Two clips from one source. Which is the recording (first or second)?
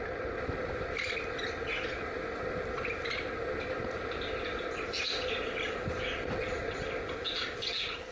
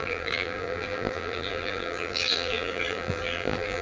first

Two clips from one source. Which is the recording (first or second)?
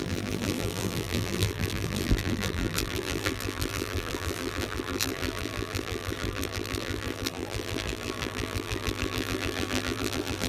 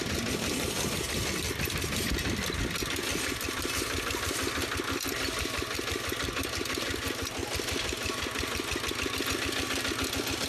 second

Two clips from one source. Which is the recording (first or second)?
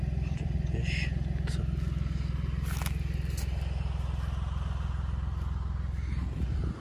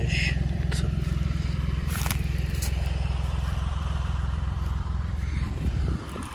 first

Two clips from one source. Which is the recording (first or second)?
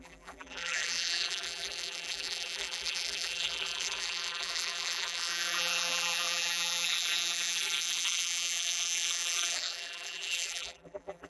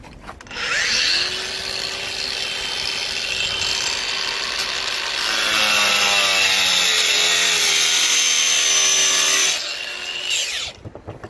second